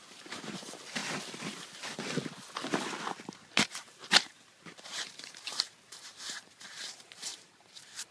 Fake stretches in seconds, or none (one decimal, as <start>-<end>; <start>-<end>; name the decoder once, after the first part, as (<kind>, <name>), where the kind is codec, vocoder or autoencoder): 0.0-1.0 (vocoder, BigVGAN v2); 3.7-8.1